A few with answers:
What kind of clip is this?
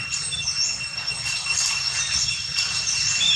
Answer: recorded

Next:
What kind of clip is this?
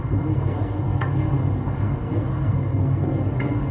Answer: remade